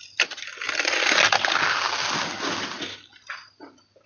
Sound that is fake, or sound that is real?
real